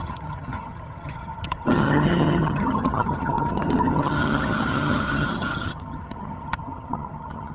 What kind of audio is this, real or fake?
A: fake